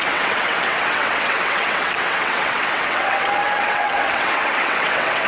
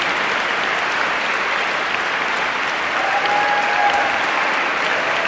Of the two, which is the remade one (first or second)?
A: first